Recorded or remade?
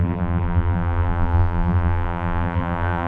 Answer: remade